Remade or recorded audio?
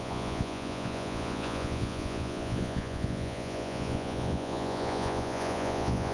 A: remade